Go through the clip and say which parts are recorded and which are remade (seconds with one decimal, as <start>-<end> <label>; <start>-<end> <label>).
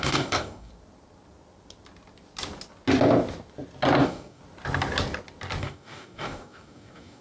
0.0-0.7 remade; 0.7-4.0 recorded; 4.0-4.4 remade; 4.4-5.6 recorded; 5.6-7.2 remade